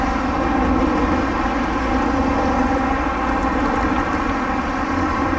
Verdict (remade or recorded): recorded